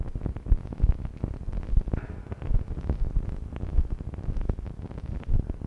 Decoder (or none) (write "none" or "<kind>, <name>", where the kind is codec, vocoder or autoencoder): none